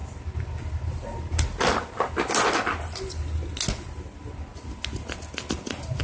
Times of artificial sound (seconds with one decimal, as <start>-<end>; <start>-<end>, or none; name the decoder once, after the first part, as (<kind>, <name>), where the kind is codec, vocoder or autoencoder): none